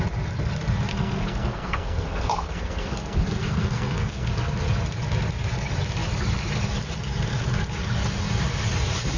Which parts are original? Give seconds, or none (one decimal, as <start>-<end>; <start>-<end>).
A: 0.0-0.9; 4.3-9.2